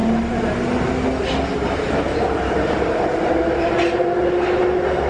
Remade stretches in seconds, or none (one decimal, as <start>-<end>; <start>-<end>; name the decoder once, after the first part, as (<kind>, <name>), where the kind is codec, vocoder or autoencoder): 1.5-4.6 (vocoder, BigVGAN v2)